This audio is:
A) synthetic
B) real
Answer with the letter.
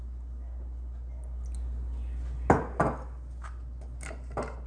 B